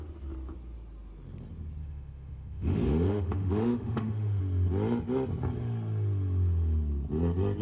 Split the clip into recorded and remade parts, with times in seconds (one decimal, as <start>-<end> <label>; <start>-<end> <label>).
0.0-1.8 recorded; 1.8-4.4 remade; 4.4-7.6 recorded